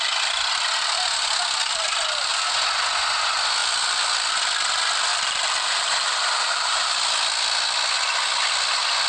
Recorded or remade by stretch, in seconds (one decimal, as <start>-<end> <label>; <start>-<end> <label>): 0.0-5.1 recorded; 5.1-6.9 remade; 6.9-9.1 recorded

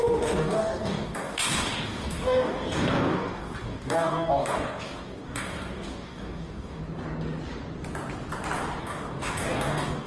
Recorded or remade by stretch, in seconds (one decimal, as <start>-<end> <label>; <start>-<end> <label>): 0.0-6.8 remade; 6.8-8.8 recorded; 8.8-10.1 remade